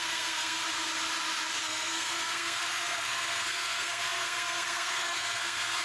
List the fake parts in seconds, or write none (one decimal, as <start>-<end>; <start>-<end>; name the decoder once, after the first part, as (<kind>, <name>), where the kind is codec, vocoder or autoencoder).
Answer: 0.0-0.6 (codec, SNAC); 1.6-5.8